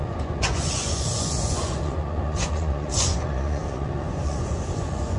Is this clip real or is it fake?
fake